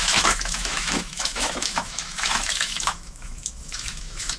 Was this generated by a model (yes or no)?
yes